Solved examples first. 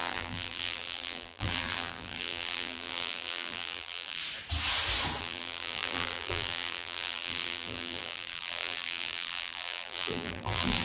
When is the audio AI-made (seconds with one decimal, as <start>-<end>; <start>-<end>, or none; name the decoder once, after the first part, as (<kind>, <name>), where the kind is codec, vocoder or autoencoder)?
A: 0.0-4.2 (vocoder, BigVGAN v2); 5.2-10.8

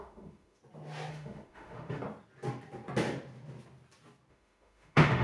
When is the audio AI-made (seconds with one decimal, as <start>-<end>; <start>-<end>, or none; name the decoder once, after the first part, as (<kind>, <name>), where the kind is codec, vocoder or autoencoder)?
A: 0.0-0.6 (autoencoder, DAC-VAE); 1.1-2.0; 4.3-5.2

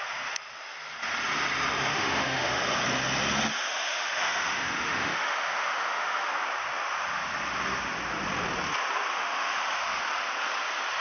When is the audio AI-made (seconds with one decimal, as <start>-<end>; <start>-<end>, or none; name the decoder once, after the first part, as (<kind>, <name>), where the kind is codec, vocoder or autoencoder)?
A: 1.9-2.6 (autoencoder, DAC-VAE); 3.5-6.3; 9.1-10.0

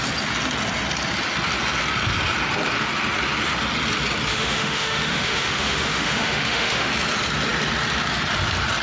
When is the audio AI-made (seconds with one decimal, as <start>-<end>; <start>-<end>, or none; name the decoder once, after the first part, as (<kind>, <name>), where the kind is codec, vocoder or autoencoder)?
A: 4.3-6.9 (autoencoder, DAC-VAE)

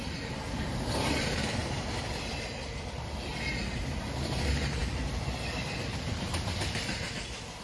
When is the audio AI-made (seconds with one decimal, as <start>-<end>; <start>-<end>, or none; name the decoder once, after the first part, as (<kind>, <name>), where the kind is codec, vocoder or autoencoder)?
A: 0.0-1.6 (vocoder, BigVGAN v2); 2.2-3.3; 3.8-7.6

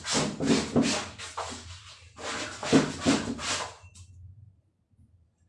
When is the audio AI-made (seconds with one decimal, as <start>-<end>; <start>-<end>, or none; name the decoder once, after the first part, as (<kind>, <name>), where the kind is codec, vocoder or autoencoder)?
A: none